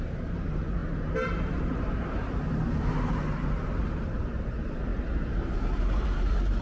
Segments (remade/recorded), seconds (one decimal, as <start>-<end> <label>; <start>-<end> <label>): 0.0-6.6 remade